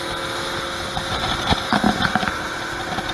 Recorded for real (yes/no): yes